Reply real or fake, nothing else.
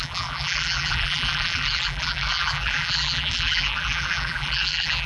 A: fake